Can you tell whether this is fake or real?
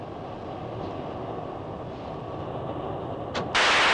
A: real